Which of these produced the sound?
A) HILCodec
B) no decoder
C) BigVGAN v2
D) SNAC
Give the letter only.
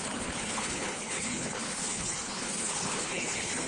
A